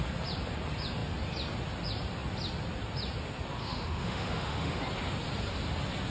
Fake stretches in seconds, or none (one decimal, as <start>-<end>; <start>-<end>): 3.6-4.8